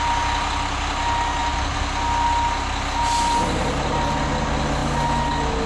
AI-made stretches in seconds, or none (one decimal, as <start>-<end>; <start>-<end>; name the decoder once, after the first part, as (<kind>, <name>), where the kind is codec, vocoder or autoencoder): none